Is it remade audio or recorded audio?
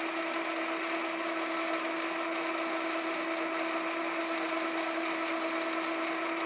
recorded